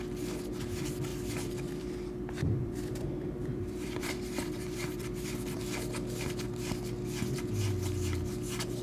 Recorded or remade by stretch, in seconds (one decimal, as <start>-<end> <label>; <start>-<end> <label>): 0.0-1.1 recorded; 1.1-5.6 remade; 5.6-8.8 recorded